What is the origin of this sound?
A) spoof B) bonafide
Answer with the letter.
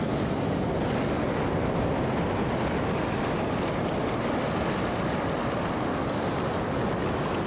B